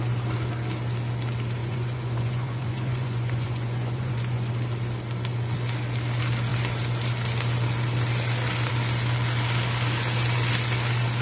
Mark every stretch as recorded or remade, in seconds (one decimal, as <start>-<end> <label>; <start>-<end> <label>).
0.0-1.6 recorded; 1.6-4.5 remade; 4.5-11.2 recorded